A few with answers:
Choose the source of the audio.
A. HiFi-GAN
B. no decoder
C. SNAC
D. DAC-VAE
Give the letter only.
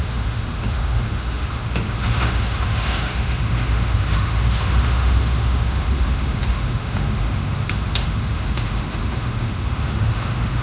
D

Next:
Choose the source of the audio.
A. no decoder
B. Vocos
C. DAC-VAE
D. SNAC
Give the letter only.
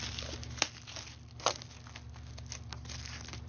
A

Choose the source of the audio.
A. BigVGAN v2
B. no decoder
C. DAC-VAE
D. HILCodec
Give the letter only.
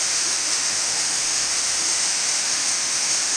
C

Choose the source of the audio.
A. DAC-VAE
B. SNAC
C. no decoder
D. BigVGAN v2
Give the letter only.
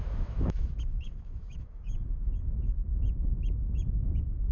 A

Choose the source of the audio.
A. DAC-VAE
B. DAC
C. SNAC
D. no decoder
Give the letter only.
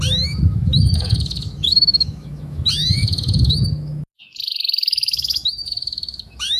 A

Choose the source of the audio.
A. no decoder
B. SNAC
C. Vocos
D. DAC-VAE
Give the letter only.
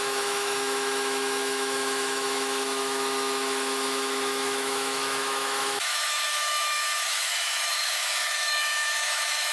D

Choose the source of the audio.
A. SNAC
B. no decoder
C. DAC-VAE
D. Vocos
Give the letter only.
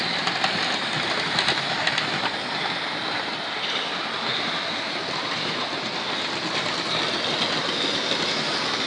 B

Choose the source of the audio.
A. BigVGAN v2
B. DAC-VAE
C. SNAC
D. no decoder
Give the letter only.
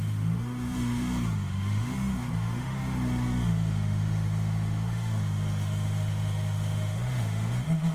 B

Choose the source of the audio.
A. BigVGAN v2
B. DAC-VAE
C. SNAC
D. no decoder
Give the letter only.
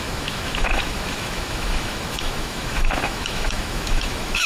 B